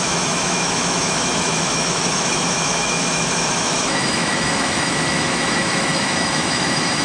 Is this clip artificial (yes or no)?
yes